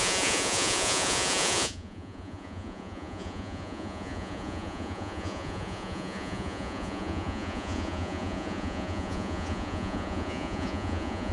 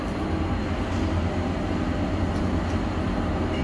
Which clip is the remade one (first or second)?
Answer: first